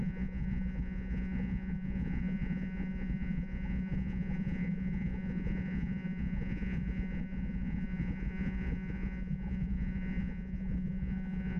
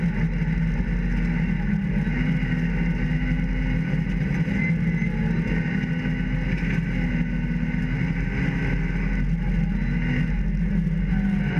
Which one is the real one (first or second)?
second